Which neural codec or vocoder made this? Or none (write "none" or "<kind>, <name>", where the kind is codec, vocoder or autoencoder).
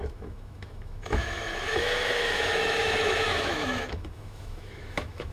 autoencoder, DAC-VAE